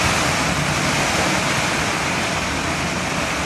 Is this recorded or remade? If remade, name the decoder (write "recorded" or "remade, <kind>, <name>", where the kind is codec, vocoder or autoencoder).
recorded